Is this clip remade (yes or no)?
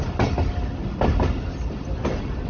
no